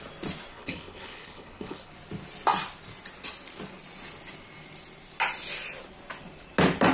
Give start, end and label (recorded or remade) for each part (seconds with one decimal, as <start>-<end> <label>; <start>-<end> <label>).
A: 0.0-0.5 recorded; 0.5-1.9 remade; 1.9-6.9 recorded